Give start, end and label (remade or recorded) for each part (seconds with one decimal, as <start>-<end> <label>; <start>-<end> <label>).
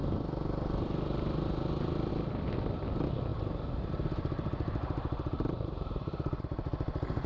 0.0-2.1 recorded; 2.1-7.3 remade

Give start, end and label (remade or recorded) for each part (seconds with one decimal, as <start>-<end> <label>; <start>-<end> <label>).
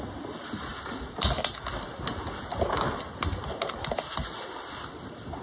0.0-5.4 recorded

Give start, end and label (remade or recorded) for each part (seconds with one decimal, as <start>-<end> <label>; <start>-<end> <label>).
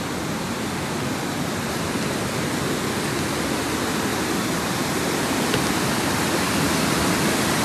0.0-4.1 recorded; 4.1-5.4 remade; 5.4-7.6 recorded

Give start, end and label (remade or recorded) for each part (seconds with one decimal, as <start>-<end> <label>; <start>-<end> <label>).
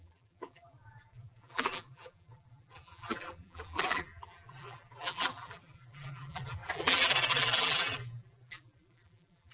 0.0-9.5 remade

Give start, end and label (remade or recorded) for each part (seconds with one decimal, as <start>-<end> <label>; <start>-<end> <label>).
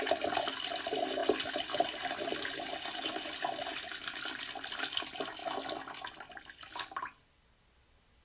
0.0-1.2 recorded; 1.2-2.4 remade; 2.4-5.4 recorded; 5.4-6.4 remade; 6.4-8.2 recorded